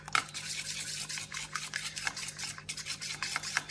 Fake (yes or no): no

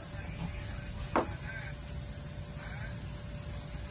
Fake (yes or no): no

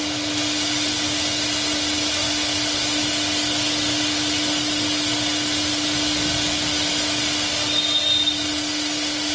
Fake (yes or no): no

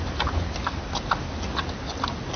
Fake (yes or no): no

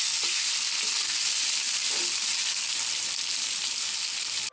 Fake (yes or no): no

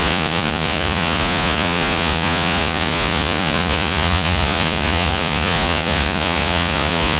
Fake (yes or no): yes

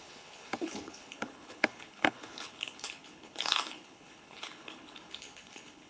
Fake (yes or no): yes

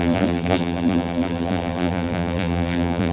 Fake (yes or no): yes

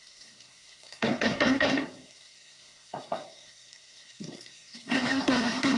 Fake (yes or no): yes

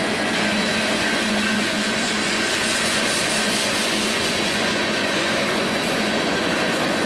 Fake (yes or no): yes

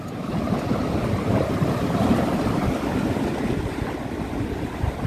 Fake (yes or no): yes